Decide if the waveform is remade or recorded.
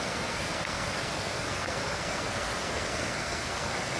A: remade